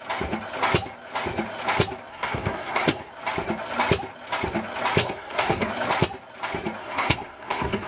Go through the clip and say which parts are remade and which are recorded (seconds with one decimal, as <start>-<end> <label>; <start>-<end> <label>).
0.0-2.1 recorded; 2.1-3.1 remade; 3.1-5.0 recorded; 5.0-5.7 remade; 5.7-6.8 recorded; 6.8-7.9 remade